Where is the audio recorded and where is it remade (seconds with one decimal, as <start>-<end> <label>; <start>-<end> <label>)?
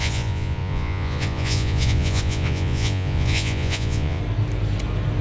0.0-4.2 remade; 4.2-5.2 recorded